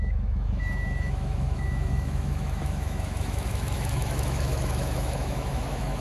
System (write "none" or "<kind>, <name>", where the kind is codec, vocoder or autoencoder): autoencoder, DAC-VAE